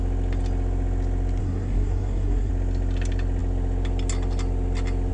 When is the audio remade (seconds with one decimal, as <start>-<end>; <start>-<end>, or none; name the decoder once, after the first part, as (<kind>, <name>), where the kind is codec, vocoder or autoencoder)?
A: 1.4-2.5 (codec, SNAC)